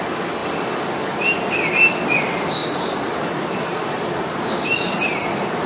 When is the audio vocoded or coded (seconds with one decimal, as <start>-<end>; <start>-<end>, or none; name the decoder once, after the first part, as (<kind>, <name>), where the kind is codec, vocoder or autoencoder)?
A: 0.4-1.3 (vocoder, BigVGAN v2); 2.6-4.1